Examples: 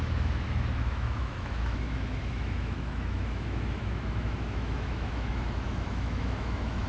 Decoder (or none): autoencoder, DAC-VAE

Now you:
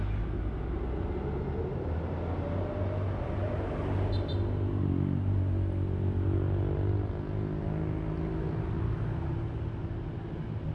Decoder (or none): none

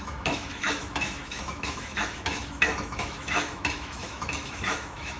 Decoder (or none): autoencoder, DAC-VAE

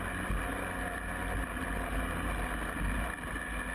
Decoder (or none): none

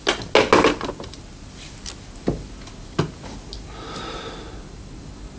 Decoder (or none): none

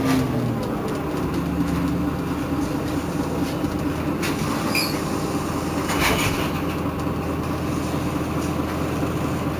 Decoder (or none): none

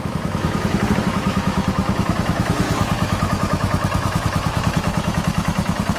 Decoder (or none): autoencoder, DAC-VAE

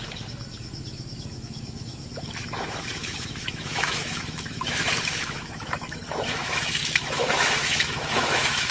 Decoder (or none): autoencoder, DAC-VAE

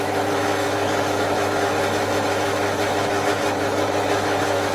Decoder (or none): autoencoder, DAC-VAE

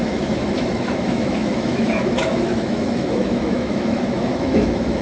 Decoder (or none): autoencoder, DAC-VAE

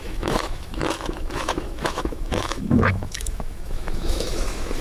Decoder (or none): autoencoder, DAC-VAE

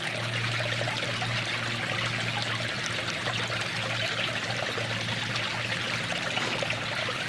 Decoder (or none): none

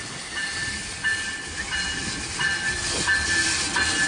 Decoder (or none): none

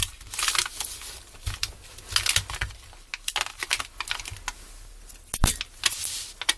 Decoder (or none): none